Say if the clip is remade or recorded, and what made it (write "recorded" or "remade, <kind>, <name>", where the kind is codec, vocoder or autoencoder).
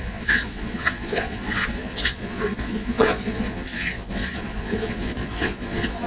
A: remade, vocoder, Vocos